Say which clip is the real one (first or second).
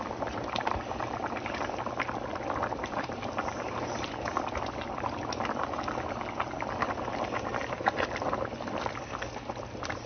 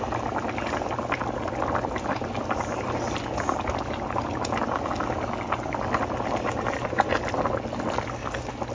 second